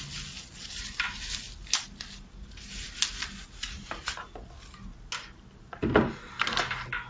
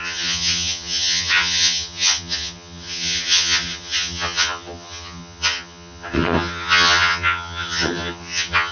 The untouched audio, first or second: first